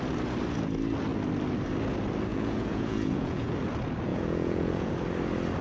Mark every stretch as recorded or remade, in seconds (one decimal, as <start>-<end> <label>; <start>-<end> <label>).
0.0-2.3 recorded; 2.3-3.5 remade; 3.5-4.1 recorded; 4.1-4.9 remade; 4.9-5.6 recorded